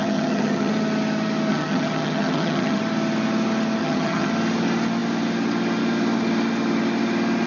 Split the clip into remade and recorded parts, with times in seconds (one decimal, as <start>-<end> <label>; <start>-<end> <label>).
0.0-0.7 remade; 0.7-1.5 recorded; 1.5-2.8 remade; 2.8-3.8 recorded; 3.8-4.3 remade; 4.3-7.5 recorded